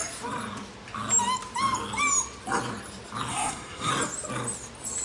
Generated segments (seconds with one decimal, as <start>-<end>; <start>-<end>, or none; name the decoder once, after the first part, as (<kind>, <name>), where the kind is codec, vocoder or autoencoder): 3.3-3.9 (codec, SNAC)